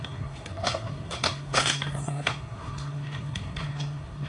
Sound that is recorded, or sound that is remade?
remade